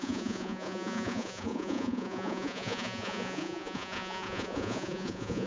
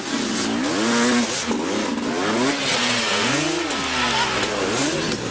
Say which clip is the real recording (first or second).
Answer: second